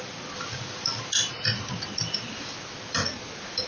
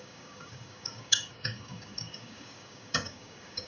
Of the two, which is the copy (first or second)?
second